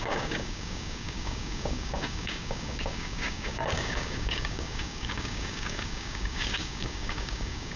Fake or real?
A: fake